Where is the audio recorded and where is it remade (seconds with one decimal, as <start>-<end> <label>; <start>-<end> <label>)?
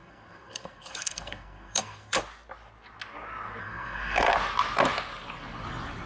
0.0-2.2 remade; 2.2-3.6 recorded; 3.6-4.3 remade; 4.3-6.1 recorded